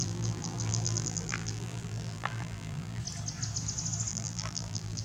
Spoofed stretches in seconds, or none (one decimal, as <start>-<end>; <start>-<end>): 0.0-3.0; 4.1-5.0